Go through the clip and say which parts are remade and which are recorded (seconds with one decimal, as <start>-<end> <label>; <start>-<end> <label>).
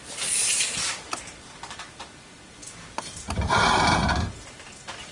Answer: 0.0-5.1 recorded